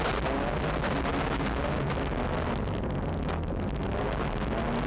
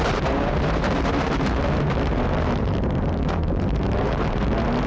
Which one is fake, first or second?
second